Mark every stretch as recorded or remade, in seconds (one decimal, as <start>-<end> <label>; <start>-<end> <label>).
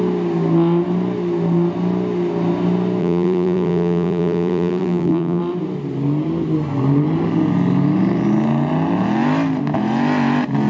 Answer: 0.0-3.0 recorded; 3.0-5.4 remade; 5.4-10.7 recorded